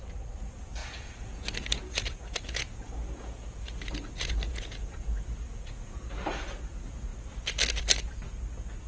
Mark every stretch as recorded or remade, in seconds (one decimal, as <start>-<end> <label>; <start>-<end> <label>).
0.0-0.8 recorded; 0.8-6.1 remade; 6.1-8.9 recorded